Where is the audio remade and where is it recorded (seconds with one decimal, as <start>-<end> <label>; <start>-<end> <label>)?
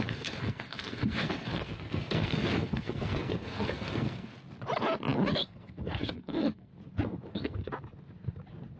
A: 0.0-4.3 remade; 4.3-5.3 recorded; 5.3-6.7 remade; 6.7-7.3 recorded; 7.3-7.7 remade; 7.7-8.8 recorded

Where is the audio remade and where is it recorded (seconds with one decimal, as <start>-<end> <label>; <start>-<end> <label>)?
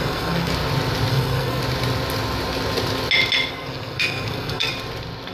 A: 0.0-0.5 remade; 0.5-1.1 recorded; 1.1-1.6 remade; 1.6-3.5 recorded; 3.5-4.7 remade; 4.7-5.3 recorded